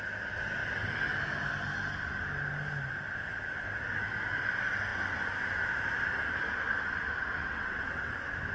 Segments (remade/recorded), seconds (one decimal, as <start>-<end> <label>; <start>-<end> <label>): 0.0-7.4 recorded; 7.4-8.1 remade; 8.1-8.5 recorded